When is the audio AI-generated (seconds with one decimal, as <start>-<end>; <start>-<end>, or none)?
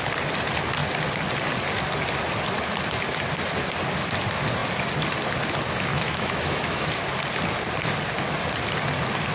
5.9-7.1